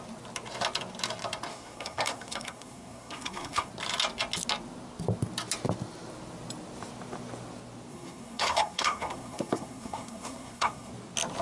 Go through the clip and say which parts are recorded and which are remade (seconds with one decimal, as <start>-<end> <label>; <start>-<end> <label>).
0.0-1.5 recorded; 1.5-3.7 remade; 3.7-7.9 recorded; 7.9-10.9 remade; 10.9-11.4 recorded

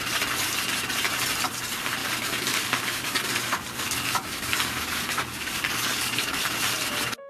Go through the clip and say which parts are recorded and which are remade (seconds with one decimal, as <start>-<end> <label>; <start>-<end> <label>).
0.0-2.0 recorded; 2.0-6.4 remade; 6.4-7.3 recorded

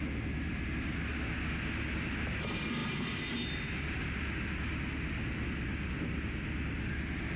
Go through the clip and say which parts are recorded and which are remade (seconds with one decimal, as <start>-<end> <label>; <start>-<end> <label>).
0.0-7.4 recorded

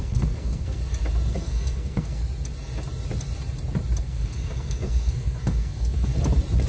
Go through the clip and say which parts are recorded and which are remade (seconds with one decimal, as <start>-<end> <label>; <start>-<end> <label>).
0.0-0.8 remade; 0.8-1.3 recorded; 1.3-2.2 remade; 2.2-4.0 recorded; 4.0-6.1 remade; 6.1-6.7 recorded

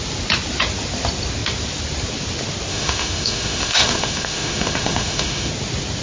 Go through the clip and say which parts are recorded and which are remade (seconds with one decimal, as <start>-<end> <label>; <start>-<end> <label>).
0.0-2.7 recorded; 2.7-5.5 remade; 5.5-6.0 recorded

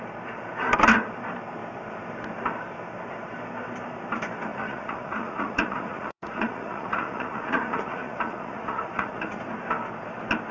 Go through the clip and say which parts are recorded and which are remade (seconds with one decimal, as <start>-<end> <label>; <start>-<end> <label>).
0.0-4.5 recorded; 4.5-9.4 remade; 9.4-10.5 recorded